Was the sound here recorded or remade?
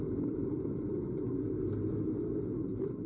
recorded